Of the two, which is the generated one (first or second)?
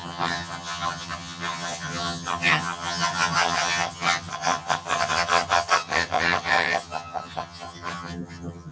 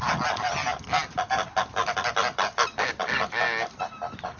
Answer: first